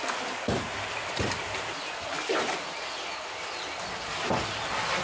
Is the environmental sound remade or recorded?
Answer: recorded